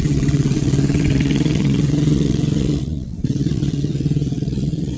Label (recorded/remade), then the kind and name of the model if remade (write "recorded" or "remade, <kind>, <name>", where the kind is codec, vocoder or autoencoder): remade, vocoder, WaveNeXt